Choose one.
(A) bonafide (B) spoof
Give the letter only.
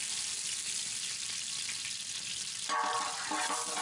A